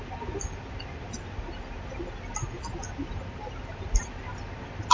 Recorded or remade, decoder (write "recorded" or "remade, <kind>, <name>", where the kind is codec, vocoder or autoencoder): recorded